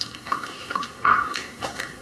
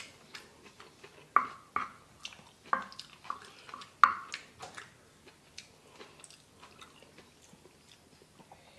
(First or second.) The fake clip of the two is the first